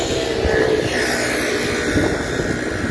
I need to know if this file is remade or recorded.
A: recorded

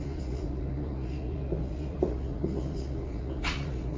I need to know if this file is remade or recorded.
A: remade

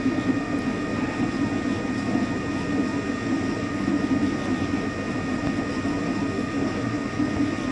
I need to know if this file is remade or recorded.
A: recorded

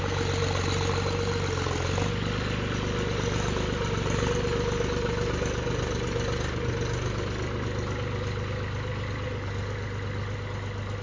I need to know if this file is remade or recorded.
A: recorded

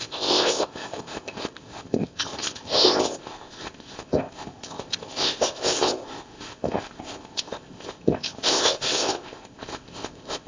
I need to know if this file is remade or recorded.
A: remade